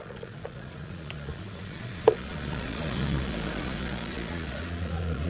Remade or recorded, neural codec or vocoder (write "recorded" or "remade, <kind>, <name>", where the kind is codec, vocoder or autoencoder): remade, vocoder, Vocos